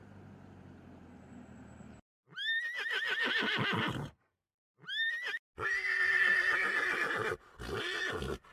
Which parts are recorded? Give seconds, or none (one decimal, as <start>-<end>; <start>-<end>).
0.0-8.5